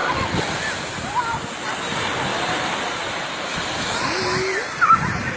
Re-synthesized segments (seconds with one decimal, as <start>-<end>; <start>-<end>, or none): none